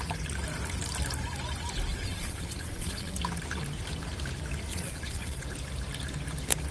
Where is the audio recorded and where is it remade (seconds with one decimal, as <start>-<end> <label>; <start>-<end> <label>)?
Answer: 0.0-1.9 recorded; 1.9-3.1 remade; 3.1-4.7 recorded; 4.7-5.4 remade; 5.4-6.7 recorded

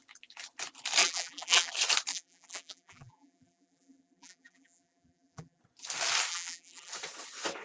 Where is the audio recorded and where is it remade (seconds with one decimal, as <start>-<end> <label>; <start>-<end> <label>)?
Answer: 0.0-1.0 recorded; 1.0-1.7 remade; 1.7-2.1 recorded; 2.1-5.6 remade; 5.6-6.3 recorded; 6.3-6.9 remade; 6.9-7.6 recorded

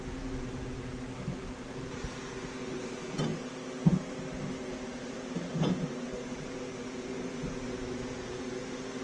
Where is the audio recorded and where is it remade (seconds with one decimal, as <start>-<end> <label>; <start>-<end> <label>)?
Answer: 0.0-3.3 remade; 3.3-3.8 recorded; 3.8-7.1 remade; 7.1-8.3 recorded; 8.3-9.0 remade

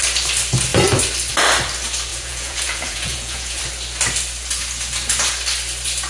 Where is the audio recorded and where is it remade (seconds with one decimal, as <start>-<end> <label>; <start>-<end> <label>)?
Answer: 0.0-2.1 recorded; 2.1-3.6 remade; 3.6-6.1 recorded

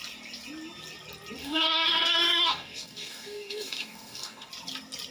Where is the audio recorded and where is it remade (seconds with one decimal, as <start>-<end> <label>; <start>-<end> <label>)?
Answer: 0.0-1.4 recorded; 1.4-4.5 remade; 4.5-5.1 recorded

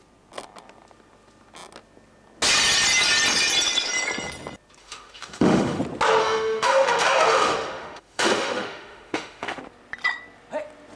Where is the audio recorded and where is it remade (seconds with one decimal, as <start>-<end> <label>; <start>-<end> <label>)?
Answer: 0.0-4.8 recorded; 4.8-5.8 remade; 5.8-6.2 recorded; 6.2-9.6 remade; 9.6-11.0 recorded